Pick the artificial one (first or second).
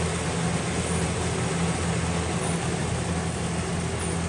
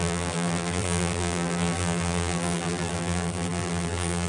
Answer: second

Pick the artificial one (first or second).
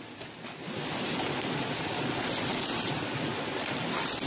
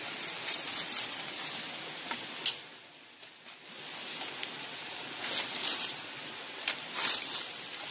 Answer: first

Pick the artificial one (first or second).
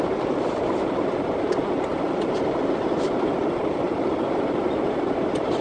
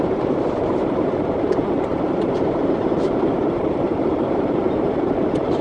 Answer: second